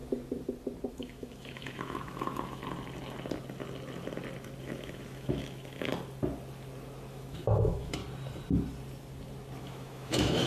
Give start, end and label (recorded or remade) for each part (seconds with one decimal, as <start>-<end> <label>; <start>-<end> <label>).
0.0-0.9 recorded; 0.9-2.6 remade; 2.6-4.6 recorded; 4.6-5.9 remade; 5.9-7.1 recorded; 7.1-8.0 remade; 8.0-9.6 recorded; 9.6-10.5 remade